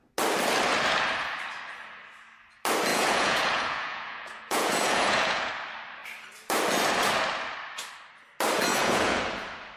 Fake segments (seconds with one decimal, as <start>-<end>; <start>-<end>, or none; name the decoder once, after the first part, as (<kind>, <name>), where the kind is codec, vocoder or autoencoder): 2.9-5.5 (vocoder, Vocos); 8.7-9.2